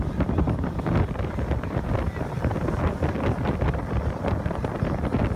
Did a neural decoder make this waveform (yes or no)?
no